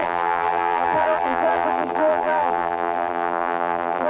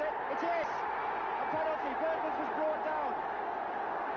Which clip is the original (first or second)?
second